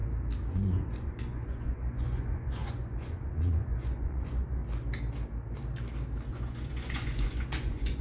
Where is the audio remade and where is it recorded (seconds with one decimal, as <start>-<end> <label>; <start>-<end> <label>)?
0.0-0.5 recorded; 0.5-4.6 remade; 4.6-6.3 recorded; 6.3-8.0 remade

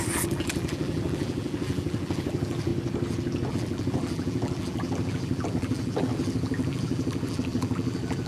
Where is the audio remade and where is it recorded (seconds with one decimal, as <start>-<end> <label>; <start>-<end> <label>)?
0.0-2.7 remade; 2.7-3.5 recorded; 3.5-8.3 remade

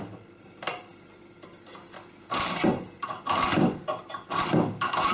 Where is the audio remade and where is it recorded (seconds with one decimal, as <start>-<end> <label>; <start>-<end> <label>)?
0.0-5.1 recorded

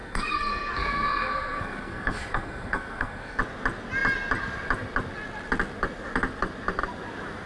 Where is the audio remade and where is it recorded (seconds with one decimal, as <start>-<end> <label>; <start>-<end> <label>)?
0.0-3.4 remade; 3.4-7.5 recorded

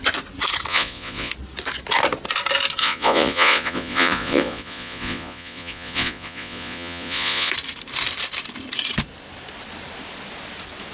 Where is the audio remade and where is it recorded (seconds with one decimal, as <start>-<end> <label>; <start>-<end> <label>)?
0.0-0.7 recorded; 0.7-1.3 remade; 1.3-2.8 recorded; 2.8-7.5 remade; 7.5-10.9 recorded